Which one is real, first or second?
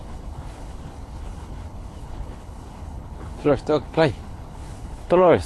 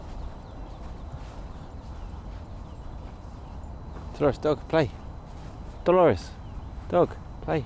second